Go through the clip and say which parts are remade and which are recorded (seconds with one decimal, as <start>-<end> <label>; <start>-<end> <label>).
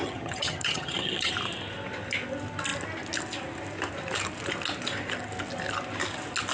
0.0-1.3 remade; 1.3-6.5 recorded